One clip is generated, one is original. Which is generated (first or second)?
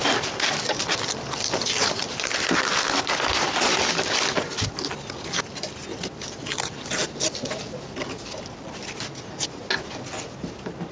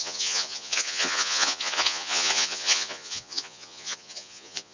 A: second